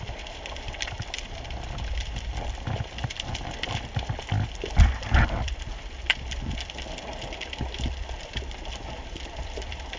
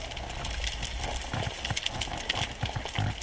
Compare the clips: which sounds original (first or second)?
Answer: second